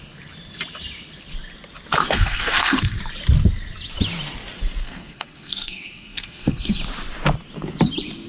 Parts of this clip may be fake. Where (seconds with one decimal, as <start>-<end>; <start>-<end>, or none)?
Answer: 2.0-3.0; 4.8-6.8